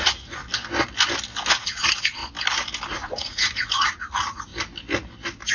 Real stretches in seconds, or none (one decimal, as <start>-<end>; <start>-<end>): 0.4-1.5; 2.2-2.9; 4.5-5.5